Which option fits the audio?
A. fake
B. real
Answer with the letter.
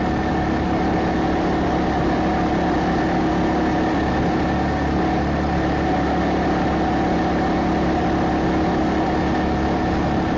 B